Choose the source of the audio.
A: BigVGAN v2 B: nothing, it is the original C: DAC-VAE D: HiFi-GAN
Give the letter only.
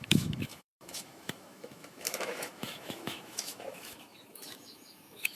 C